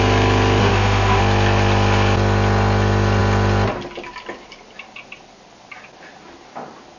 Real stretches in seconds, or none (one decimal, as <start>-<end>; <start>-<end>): 0.0-0.6; 1.2-7.0